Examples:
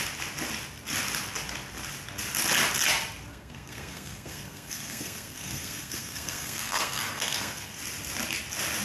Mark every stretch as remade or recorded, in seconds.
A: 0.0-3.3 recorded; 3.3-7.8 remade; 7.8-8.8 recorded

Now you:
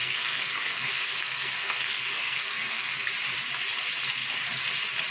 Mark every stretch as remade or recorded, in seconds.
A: 0.0-3.1 remade; 3.1-5.1 recorded

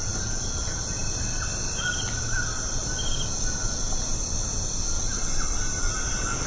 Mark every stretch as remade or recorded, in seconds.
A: 0.0-6.5 recorded

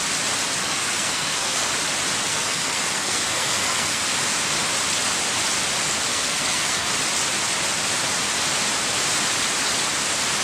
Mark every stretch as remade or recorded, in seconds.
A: 0.0-0.6 recorded; 0.6-1.7 remade; 1.7-2.3 recorded; 2.3-4.0 remade; 4.0-6.1 recorded; 6.1-6.9 remade; 6.9-10.4 recorded

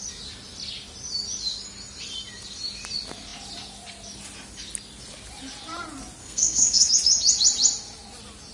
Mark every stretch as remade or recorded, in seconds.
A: 0.0-6.2 recorded; 6.2-6.9 remade; 6.9-8.5 recorded

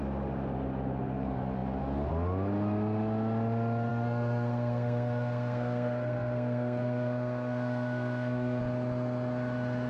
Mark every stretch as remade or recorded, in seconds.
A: 0.0-3.9 recorded; 3.9-8.6 remade; 8.6-9.9 recorded